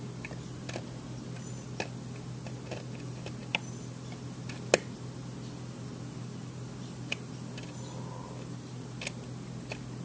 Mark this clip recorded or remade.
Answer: recorded